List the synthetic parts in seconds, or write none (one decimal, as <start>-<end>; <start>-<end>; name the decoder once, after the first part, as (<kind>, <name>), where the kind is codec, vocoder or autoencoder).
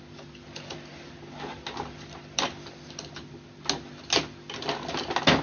0.9-3.3 (vocoder, BigVGAN v2)